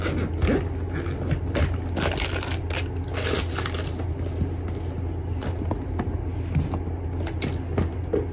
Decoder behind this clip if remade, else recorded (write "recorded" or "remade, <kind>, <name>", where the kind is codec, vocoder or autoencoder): recorded